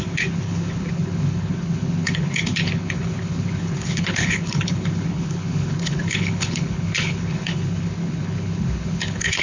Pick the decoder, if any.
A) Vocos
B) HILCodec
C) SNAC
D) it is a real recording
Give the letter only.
B